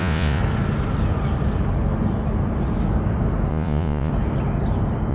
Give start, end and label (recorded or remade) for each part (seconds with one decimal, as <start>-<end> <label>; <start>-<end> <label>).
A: 0.0-0.4 remade; 0.4-3.5 recorded; 3.5-4.1 remade; 4.1-5.1 recorded